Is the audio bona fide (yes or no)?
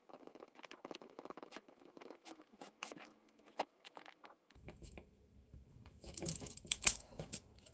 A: no